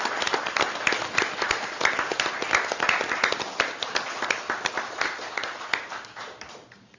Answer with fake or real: real